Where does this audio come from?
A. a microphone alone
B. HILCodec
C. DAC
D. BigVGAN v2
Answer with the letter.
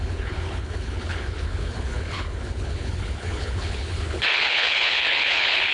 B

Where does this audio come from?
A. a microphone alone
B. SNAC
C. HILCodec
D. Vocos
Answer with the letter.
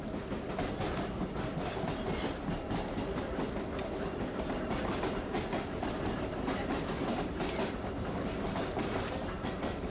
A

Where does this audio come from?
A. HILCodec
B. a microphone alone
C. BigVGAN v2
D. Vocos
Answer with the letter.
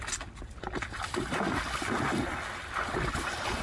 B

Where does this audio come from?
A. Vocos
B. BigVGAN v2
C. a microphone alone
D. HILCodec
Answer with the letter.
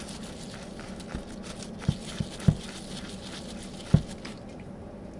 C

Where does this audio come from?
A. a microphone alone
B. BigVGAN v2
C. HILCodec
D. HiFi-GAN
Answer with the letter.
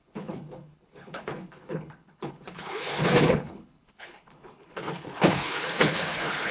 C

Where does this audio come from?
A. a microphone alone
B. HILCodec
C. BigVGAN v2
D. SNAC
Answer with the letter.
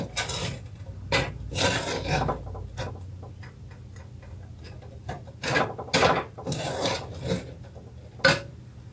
A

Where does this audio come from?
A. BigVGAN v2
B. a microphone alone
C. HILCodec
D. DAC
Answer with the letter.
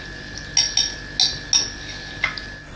B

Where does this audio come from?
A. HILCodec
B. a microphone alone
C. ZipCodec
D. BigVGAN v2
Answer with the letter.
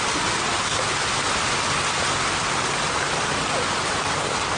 B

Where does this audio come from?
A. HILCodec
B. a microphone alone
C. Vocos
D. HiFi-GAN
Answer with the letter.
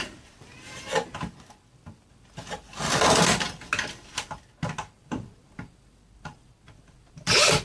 B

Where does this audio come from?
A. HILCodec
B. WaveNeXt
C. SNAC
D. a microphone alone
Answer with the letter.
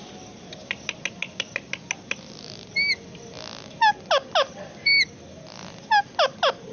D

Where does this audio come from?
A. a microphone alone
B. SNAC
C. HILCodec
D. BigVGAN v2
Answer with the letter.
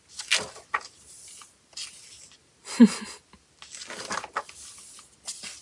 A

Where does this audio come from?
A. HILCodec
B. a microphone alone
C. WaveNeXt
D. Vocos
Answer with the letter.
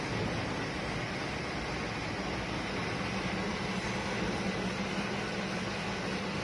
B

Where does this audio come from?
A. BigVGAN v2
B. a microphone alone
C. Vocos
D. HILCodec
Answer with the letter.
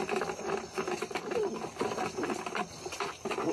B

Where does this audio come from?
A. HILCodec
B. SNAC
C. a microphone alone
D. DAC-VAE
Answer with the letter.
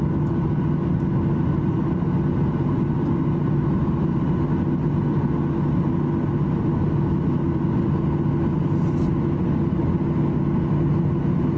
C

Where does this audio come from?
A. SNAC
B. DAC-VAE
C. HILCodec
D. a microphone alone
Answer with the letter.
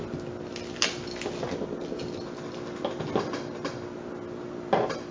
D